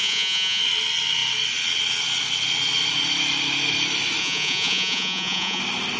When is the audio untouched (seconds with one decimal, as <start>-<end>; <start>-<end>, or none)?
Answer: 0.6-4.2; 5.6-6.0